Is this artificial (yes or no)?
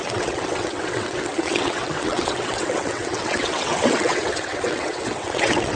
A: yes